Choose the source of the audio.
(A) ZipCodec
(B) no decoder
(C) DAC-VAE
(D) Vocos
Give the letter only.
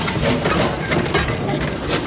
B